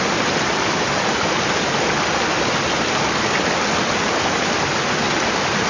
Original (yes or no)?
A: yes